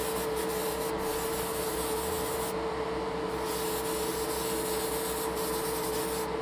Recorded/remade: recorded